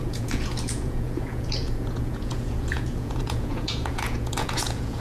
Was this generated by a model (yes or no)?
yes